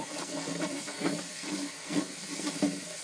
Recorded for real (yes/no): no